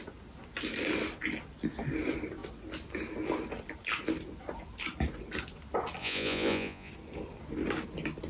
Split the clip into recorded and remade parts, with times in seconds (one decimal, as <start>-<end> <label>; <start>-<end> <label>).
0.0-6.0 recorded; 6.0-6.9 remade; 6.9-8.3 recorded